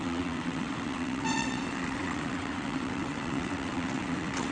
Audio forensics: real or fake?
fake